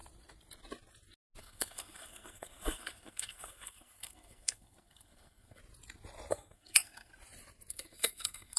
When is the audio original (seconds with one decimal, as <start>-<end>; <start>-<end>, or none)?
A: 0.0-1.4; 5.6-6.3; 7.1-7.7